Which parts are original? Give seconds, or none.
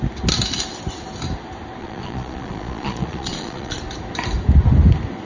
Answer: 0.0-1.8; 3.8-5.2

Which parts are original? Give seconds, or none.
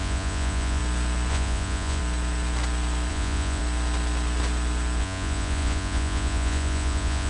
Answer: 0.8-1.3; 2.0-3.1; 3.6-5.0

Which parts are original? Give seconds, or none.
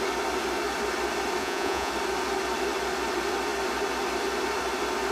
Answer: 0.0-1.4; 1.9-5.1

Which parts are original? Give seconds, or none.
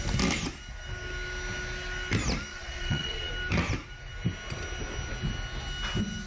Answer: 0.0-2.5; 3.3-6.3